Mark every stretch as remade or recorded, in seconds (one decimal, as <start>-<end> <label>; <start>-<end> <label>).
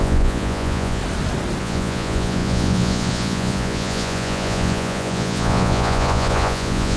0.0-1.0 remade; 1.0-1.6 recorded; 1.6-7.0 remade